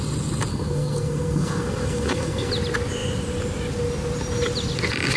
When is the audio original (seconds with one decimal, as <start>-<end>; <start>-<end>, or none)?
0.0-0.5; 2.5-5.2